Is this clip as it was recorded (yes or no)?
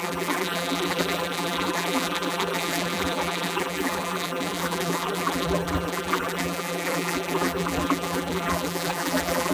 no